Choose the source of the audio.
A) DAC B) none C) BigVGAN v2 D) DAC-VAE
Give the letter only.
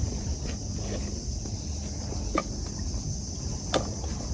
B